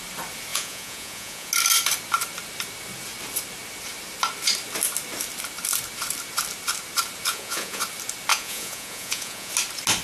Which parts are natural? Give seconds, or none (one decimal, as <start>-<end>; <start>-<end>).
0.0-0.5; 1.5-7.3; 7.8-8.3; 9.5-10.0